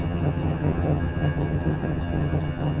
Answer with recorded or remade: remade